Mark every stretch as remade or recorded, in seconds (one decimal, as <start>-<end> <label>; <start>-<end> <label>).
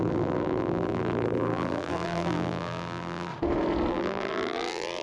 0.0-3.3 remade; 3.3-3.9 recorded; 3.9-5.0 remade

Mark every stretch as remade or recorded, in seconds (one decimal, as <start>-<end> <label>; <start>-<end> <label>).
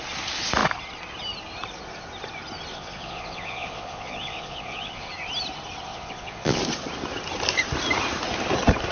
0.0-2.7 recorded; 2.7-5.1 remade; 5.1-5.9 recorded; 5.9-6.6 remade; 6.6-8.9 recorded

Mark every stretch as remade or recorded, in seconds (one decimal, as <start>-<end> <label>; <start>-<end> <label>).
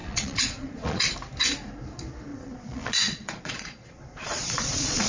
0.0-1.1 remade; 1.1-2.3 recorded; 2.3-5.1 remade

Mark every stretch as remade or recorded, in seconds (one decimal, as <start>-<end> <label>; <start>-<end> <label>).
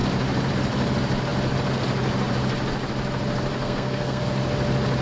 0.0-3.5 recorded; 3.5-4.2 remade; 4.2-5.0 recorded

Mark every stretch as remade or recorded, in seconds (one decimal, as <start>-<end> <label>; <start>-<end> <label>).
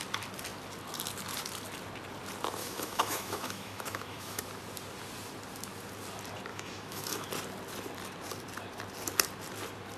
0.0-2.6 recorded; 2.6-4.4 remade; 4.4-6.5 recorded; 6.5-7.3 remade; 7.3-10.0 recorded